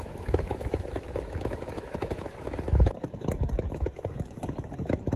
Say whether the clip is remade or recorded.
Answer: remade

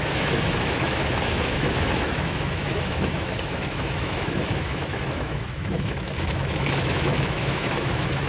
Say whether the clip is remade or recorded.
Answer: remade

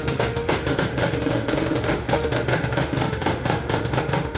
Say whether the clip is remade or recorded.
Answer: remade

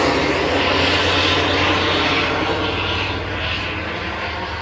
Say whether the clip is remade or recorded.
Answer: recorded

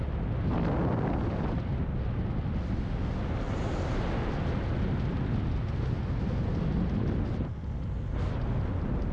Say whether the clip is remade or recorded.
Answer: recorded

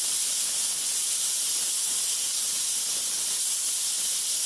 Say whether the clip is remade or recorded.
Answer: recorded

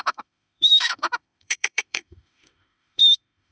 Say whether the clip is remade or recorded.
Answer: remade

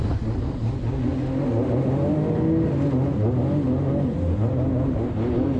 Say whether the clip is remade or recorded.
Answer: recorded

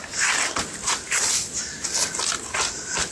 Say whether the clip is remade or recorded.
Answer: recorded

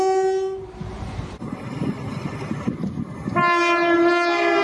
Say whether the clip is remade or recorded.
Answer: recorded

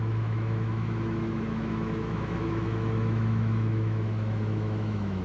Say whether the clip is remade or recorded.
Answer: remade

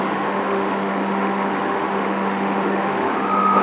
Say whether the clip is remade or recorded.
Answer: remade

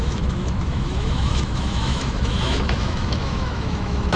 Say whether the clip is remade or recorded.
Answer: remade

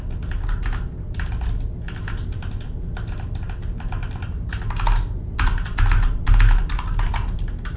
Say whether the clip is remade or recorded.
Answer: recorded